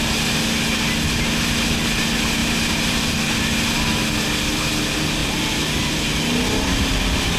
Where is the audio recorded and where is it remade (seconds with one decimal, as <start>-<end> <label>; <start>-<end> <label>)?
0.0-2.4 recorded; 2.4-3.1 remade; 3.1-5.2 recorded; 5.2-5.9 remade; 5.9-7.4 recorded